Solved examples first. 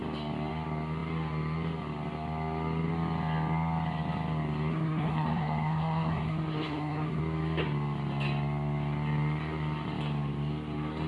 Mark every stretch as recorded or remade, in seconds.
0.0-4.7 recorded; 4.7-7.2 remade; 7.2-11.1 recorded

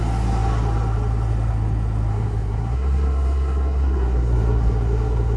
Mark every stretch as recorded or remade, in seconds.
0.0-2.1 recorded; 2.1-5.4 remade